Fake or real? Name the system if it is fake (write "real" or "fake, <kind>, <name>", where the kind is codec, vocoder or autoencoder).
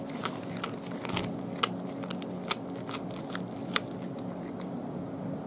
real